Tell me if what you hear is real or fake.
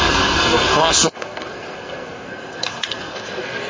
fake